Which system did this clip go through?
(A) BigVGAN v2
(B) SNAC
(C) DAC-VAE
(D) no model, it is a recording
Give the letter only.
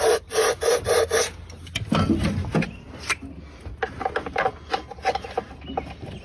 D